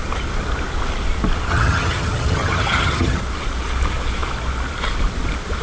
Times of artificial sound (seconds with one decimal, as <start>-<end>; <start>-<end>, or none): 1.5-3.2